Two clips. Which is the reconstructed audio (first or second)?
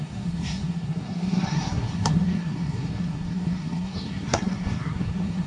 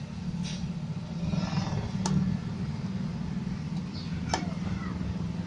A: first